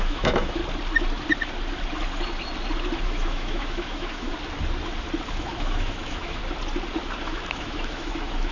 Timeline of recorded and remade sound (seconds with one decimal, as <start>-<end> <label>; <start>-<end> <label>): 0.0-0.6 remade; 0.6-3.0 recorded; 3.0-4.3 remade; 4.3-5.3 recorded; 5.3-6.4 remade; 6.4-7.2 recorded; 7.2-8.5 remade